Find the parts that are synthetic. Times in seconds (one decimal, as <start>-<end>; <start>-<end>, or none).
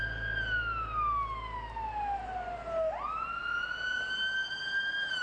none